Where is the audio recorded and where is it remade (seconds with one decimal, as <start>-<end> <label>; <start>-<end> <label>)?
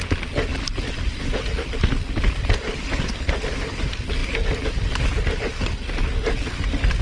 0.0-7.0 recorded